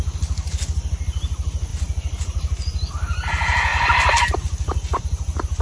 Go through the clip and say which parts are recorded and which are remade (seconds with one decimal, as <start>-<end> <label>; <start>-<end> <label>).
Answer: 0.0-1.7 recorded; 1.7-2.9 remade; 2.9-3.7 recorded; 3.7-5.0 remade; 5.0-5.6 recorded

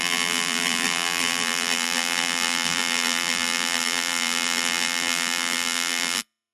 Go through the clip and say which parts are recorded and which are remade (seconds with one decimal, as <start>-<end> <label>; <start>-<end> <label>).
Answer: 0.0-6.5 remade

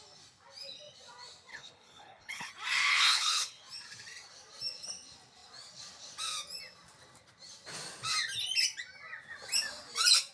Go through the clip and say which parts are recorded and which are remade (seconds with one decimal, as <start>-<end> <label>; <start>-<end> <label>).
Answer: 0.0-1.5 recorded; 1.5-2.5 remade; 2.5-2.9 recorded; 2.9-3.6 remade; 3.6-10.3 recorded

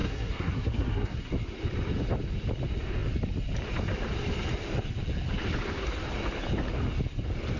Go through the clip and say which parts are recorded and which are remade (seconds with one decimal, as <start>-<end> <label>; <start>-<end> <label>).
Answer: 0.0-1.3 remade; 1.3-7.6 recorded

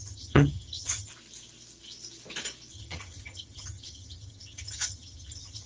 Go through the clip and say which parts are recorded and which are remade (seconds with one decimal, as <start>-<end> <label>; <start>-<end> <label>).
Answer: 0.0-1.1 remade; 1.1-2.7 recorded; 2.7-5.7 remade

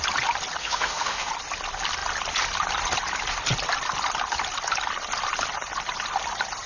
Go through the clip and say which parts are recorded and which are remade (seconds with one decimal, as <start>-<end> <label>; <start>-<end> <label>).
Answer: 0.0-0.6 recorded; 0.6-1.3 remade; 1.3-6.7 recorded

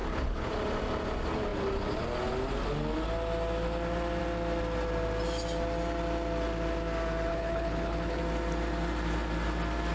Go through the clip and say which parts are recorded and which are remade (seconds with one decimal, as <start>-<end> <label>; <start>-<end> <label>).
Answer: 0.0-0.5 remade; 0.5-7.3 recorded; 7.3-8.2 remade; 8.2-9.9 recorded

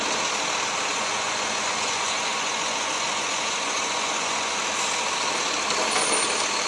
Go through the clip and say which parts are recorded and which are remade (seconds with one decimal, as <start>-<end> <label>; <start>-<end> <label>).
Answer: 0.0-0.9 recorded; 0.9-4.6 remade; 4.6-6.7 recorded